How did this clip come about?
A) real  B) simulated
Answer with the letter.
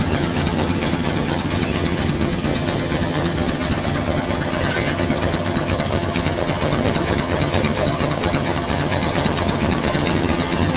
B